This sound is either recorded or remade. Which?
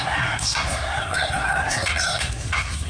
remade